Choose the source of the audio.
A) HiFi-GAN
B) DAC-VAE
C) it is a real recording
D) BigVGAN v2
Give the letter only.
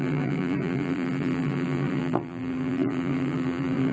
D